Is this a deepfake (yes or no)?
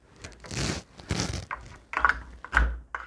no